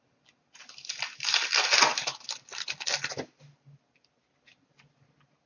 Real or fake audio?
real